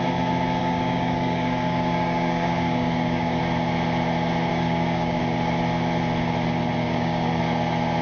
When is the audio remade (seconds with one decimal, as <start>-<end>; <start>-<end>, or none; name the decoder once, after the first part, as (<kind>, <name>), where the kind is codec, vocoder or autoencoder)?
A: 0.6-3.4 (codec, DAC); 4.5-5.2; 6.8-7.4